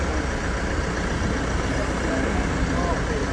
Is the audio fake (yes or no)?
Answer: no